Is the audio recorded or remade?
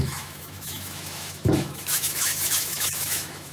remade